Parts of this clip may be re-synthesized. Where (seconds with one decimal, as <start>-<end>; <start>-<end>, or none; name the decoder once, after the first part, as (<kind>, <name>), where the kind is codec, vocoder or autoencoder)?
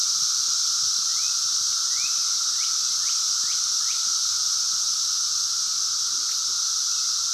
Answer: none